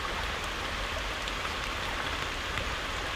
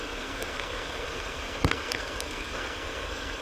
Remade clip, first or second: second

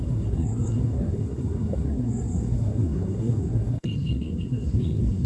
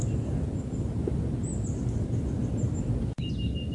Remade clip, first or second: first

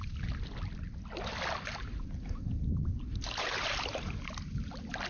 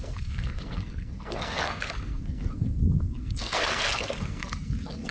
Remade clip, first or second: second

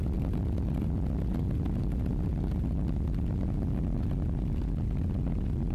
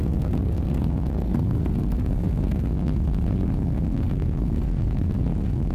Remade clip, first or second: second